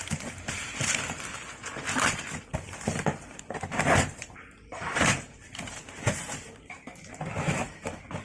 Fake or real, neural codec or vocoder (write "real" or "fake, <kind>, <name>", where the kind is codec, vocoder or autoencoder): fake, vocoder, BigVGAN v2